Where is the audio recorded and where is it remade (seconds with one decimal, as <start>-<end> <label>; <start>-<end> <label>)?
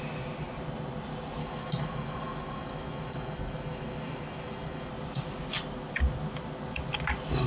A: 0.0-1.4 recorded; 1.4-4.9 remade; 4.9-7.5 recorded